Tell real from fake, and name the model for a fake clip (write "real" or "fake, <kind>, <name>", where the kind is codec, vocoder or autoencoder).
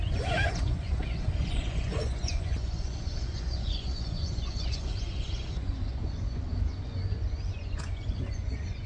fake, vocoder, Vocos